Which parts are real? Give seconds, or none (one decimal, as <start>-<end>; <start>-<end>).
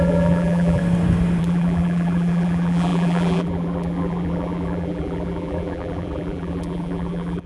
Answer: 0.8-1.4